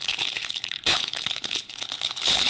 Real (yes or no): no